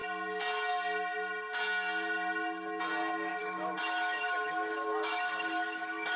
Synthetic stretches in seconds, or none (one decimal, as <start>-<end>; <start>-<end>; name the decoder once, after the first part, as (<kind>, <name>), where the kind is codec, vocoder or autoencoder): 3.4-6.2 (autoencoder, DAC-VAE)